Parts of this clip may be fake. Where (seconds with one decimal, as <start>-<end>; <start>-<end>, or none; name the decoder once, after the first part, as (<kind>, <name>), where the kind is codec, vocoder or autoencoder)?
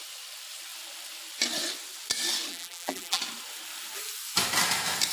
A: 2.5-3.2 (vocoder, BigVGAN v2)